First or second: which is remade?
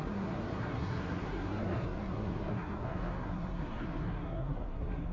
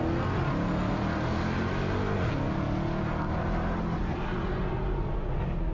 first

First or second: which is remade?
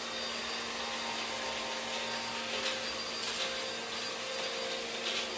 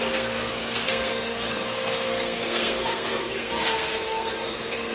second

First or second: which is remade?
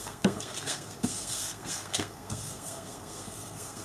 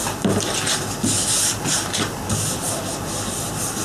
first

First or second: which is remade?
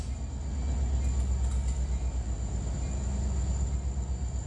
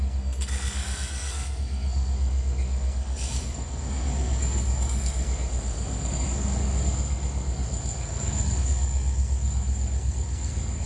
second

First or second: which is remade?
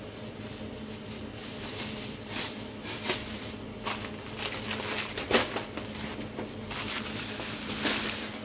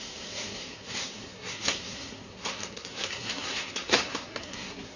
second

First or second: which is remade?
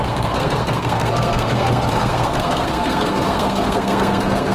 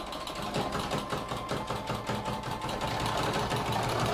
first